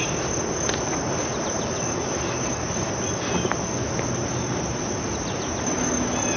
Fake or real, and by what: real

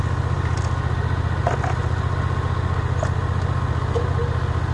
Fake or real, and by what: real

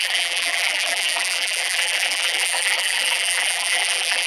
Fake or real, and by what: fake, vocoder, BigVGAN v2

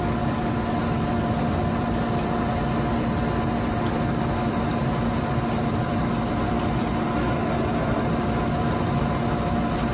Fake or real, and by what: real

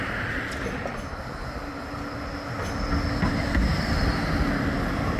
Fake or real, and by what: real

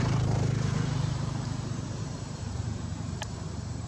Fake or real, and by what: fake, vocoder, BigVGAN v2